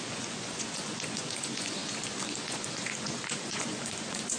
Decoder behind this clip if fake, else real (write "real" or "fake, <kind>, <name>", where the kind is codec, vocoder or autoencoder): fake, vocoder, Vocos